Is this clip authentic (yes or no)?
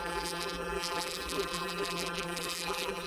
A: no